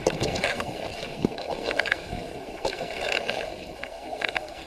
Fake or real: fake